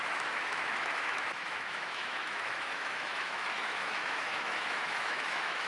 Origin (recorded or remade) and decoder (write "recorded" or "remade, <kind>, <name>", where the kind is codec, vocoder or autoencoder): remade, autoencoder, DAC-VAE